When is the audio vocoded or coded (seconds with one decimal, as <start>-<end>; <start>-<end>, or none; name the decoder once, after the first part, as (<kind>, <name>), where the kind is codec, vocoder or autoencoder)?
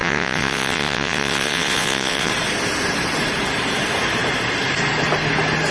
0.0-2.3 (vocoder, WaveNeXt)